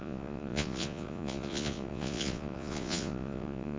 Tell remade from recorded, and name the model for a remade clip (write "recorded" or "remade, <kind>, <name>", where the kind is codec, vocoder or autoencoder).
remade, vocoder, Vocos